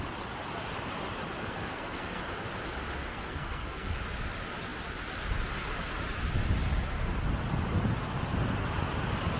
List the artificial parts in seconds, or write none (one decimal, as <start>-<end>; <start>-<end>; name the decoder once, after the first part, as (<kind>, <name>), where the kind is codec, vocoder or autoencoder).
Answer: 1.4-2.2 (codec, SNAC); 3.1-4.0